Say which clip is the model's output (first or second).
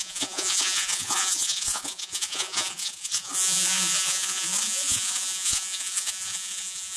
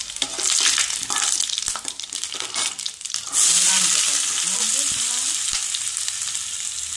first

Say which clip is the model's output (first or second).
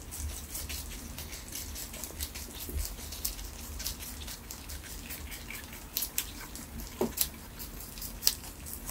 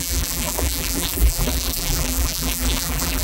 second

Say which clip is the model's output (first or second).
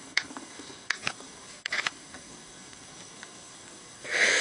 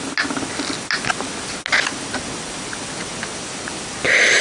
first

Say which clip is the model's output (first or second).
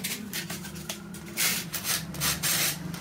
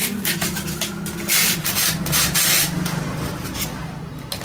first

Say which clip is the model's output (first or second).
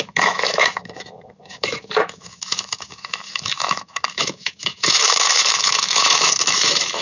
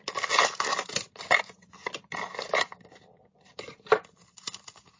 first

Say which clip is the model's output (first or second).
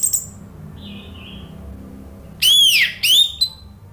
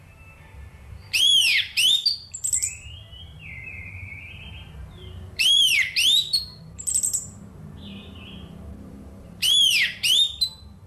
second